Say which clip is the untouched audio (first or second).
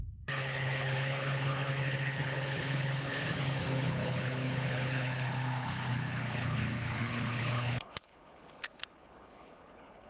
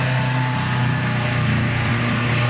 second